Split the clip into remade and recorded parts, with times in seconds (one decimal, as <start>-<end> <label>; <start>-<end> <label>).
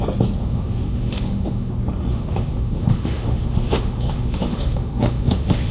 0.0-0.4 recorded; 0.4-1.7 remade; 1.7-2.1 recorded; 2.1-5.7 remade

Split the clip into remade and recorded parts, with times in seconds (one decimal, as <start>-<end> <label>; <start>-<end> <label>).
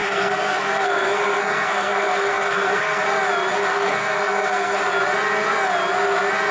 0.0-3.0 remade; 3.0-3.7 recorded; 3.7-4.8 remade; 4.8-6.5 recorded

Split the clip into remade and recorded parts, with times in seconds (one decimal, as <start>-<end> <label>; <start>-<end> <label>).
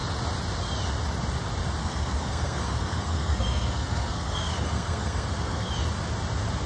0.0-1.8 recorded; 1.8-5.7 remade; 5.7-6.7 recorded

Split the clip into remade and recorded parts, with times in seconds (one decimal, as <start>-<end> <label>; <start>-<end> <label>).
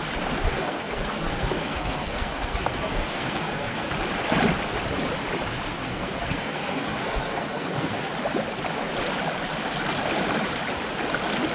0.0-0.5 recorded; 0.5-3.9 remade; 3.9-5.7 recorded; 5.7-8.1 remade; 8.1-11.5 recorded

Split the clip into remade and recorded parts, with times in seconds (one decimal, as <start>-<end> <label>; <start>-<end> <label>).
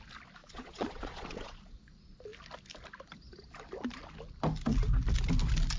0.0-0.4 recorded; 0.4-1.8 remade; 1.8-5.8 recorded